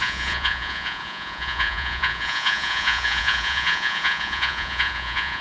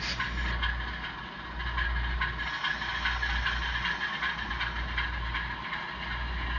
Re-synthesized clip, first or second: first